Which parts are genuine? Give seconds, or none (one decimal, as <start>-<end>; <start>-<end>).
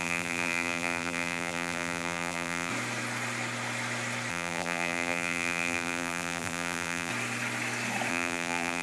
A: 2.7-4.3; 7.1-8.1